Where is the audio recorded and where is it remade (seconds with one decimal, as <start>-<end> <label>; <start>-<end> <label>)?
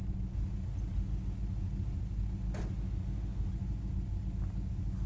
0.0-5.1 recorded